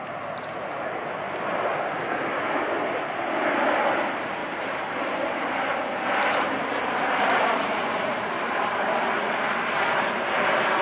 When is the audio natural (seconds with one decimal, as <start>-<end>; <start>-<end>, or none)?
0.0-4.4; 8.8-10.8